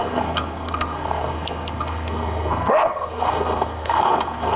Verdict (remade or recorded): remade